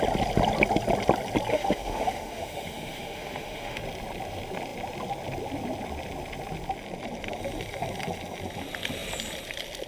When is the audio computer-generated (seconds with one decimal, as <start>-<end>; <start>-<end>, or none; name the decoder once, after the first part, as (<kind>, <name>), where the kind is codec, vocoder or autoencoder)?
1.5-3.8 (autoencoder, DAC-VAE)